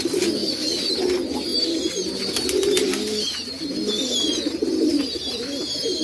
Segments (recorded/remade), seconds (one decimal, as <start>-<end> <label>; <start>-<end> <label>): 0.0-6.0 recorded